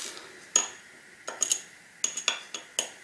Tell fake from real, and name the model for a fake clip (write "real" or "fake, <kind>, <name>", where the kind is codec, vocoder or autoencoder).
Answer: real